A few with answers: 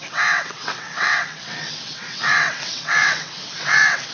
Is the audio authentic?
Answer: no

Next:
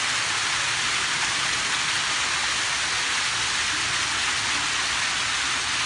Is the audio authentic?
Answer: yes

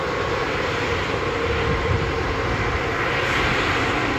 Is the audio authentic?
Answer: yes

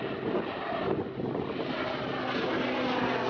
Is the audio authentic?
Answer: yes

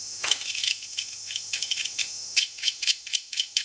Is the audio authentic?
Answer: no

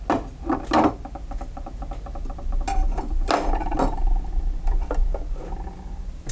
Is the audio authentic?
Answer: yes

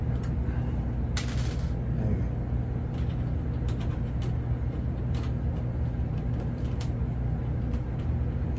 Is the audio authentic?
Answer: yes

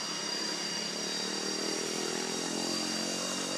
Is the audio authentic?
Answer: no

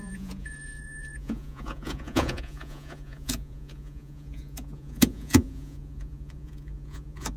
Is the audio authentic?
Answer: no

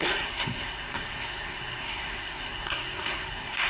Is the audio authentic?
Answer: no